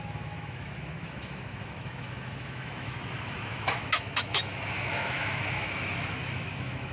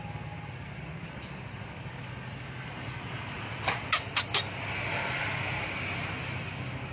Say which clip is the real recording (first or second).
second